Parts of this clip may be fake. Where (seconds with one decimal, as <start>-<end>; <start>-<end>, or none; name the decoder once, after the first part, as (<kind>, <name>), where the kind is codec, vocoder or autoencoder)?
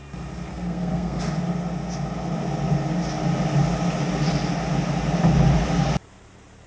0.5-1.2 (codec, SNAC)